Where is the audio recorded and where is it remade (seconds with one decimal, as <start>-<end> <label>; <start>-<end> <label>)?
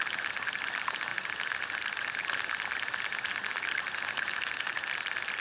0.0-5.4 recorded